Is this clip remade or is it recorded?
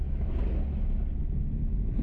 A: recorded